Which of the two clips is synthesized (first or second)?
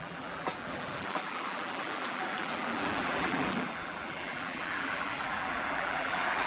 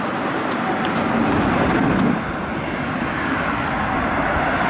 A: first